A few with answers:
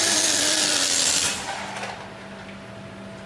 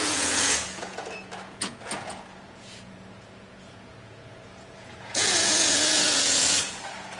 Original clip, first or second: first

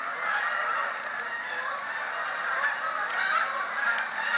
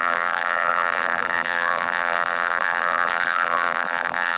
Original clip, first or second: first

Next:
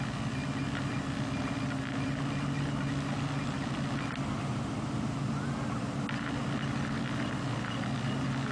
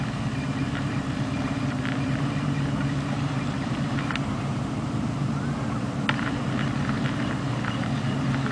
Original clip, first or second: first